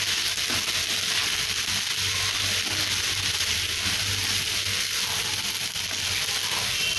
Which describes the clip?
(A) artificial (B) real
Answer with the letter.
B